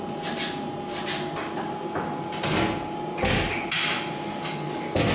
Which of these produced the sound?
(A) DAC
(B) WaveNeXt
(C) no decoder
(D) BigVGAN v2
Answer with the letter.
C